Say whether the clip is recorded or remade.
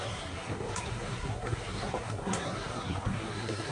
remade